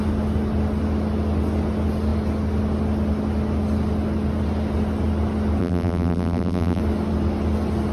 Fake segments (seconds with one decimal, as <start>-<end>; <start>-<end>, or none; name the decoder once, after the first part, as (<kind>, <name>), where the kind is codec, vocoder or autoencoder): 5.6-6.8 (vocoder, BigVGAN v2)